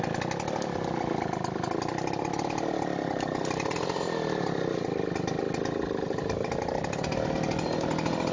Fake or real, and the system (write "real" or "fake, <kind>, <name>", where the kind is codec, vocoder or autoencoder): real